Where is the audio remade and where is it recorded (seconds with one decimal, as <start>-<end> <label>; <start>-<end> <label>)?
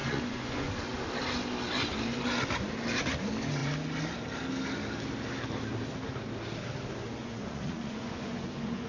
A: 0.0-0.7 remade; 0.7-7.2 recorded; 7.2-8.9 remade